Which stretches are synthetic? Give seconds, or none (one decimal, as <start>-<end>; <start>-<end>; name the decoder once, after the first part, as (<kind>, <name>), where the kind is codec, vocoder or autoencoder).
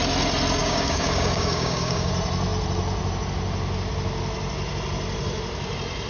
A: 0.6-2.1 (codec, DAC)